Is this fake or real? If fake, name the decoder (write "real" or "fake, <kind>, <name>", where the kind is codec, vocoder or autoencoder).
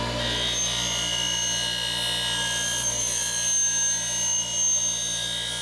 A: real